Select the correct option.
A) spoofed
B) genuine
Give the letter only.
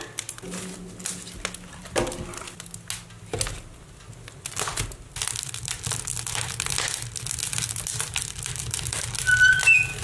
B